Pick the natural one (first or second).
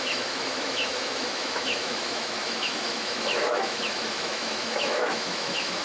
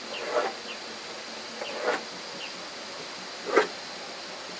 second